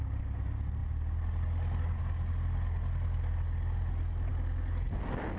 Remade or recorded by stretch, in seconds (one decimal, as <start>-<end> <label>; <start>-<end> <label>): 0.0-5.4 recorded